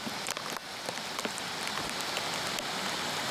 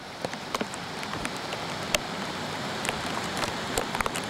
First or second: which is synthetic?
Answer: second